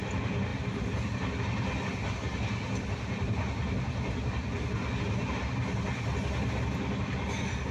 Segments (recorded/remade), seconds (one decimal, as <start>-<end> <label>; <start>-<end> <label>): 0.0-7.7 recorded